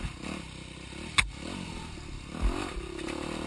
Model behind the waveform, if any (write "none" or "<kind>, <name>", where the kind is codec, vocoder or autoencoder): none